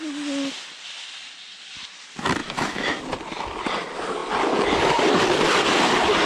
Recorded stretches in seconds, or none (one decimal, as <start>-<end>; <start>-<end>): 0.0-2.4; 3.0-6.3